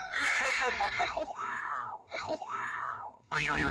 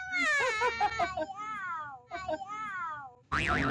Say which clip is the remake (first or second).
first